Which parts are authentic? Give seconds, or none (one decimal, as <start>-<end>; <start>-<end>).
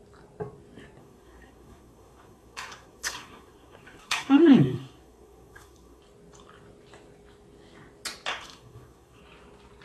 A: 0.0-1.0; 6.0-8.3; 9.2-9.8